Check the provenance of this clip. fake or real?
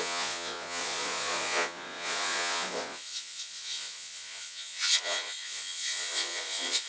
fake